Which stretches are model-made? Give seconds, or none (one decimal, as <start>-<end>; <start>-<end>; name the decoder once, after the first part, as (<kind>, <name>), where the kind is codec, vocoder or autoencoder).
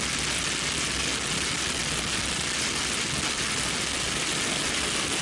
none